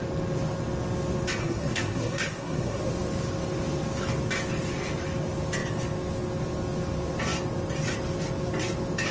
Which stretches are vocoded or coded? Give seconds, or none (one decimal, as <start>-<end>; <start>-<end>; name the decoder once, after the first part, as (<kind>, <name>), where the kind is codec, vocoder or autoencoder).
1.4-2.8 (codec, SNAC)